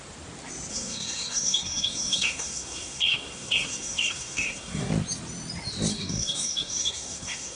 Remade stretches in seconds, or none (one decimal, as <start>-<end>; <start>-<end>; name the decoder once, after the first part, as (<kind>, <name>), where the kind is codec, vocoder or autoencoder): 0.7-4.9 (codec, SNAC); 5.9-7.6